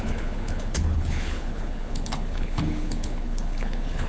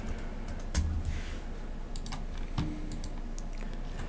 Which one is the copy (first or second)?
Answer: first